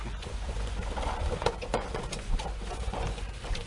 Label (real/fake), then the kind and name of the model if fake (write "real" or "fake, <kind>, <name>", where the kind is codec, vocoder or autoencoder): fake, vocoder, Vocos